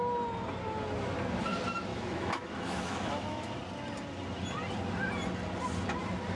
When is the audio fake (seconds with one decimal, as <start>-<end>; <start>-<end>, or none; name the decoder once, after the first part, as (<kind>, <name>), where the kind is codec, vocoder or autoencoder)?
1.9-3.5 (autoencoder, DAC-VAE)